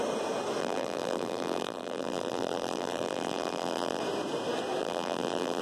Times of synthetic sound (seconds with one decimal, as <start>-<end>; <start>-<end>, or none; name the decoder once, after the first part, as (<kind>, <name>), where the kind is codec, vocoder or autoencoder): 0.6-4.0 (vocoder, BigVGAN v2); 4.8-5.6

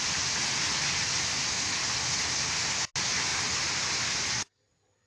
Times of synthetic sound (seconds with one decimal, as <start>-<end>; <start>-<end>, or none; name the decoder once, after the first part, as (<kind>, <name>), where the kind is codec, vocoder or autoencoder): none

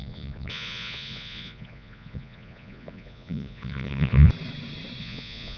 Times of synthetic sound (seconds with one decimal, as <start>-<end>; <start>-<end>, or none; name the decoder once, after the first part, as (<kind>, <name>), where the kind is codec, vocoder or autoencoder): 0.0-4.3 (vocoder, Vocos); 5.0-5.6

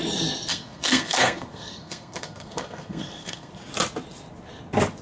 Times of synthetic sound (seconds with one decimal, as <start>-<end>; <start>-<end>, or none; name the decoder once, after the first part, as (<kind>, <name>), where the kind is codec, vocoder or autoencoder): 0.5-3.5 (codec, SNAC)

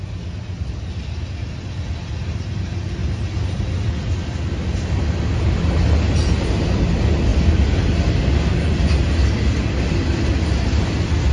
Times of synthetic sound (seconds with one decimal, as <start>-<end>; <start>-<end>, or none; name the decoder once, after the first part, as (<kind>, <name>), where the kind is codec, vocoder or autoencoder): none